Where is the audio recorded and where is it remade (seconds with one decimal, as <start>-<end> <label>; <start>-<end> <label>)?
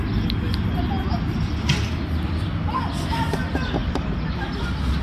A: 0.0-3.8 recorded; 3.8-4.5 remade; 4.5-5.0 recorded